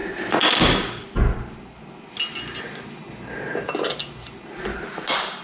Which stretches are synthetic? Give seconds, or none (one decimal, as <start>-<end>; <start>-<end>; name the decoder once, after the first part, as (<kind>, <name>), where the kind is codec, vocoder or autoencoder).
none

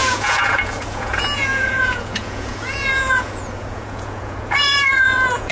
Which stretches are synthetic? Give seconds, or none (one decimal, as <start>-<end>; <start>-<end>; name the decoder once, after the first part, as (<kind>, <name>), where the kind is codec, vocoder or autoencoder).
0.0-5.5 (vocoder, Vocos)

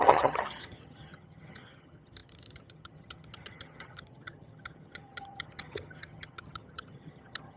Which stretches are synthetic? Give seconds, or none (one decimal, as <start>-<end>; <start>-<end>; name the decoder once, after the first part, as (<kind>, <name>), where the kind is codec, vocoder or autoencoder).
0.0-7.6 (vocoder, HiFi-GAN)